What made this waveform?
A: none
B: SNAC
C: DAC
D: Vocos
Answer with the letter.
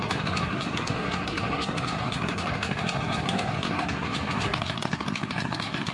B